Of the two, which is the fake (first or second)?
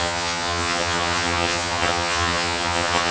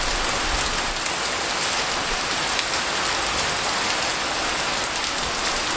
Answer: first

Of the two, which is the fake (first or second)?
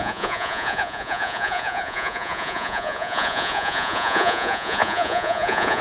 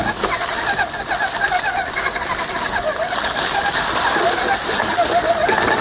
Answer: first